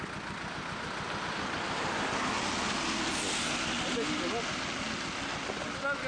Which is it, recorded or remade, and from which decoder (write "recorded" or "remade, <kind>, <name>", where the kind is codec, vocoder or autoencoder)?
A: recorded